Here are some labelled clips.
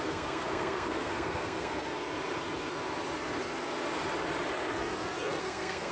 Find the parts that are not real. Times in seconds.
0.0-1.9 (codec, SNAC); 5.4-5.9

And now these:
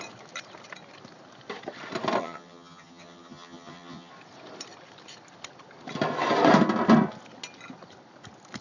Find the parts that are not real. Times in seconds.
2.2-4.1 (vocoder, HiFi-GAN)

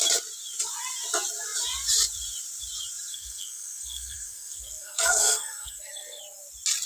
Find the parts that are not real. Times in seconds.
3.1-6.2 (codec, SNAC)

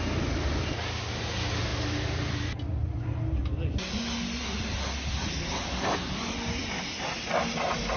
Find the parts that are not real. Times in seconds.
none

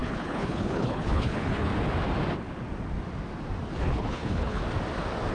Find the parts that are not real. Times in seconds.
0.0-1.7 (codec, HILCodec); 3.8-4.6